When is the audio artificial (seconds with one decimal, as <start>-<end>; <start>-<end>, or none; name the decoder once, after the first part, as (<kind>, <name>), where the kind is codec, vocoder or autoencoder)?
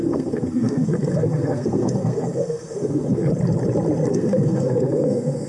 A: 0.0-3.3 (codec, SNAC); 4.1-5.5